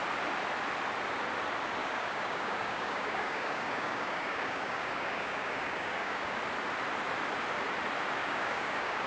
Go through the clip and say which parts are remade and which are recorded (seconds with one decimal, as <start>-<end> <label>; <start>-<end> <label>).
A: 0.0-1.8 recorded; 1.8-6.4 remade; 6.4-8.2 recorded; 8.2-9.1 remade